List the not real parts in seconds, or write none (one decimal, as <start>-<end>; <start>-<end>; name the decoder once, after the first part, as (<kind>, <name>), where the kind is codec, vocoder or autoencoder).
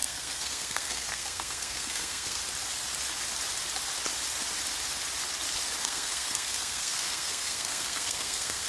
0.0-2.4 (codec, SNAC); 5.8-8.7